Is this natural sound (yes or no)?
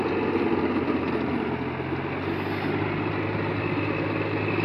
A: yes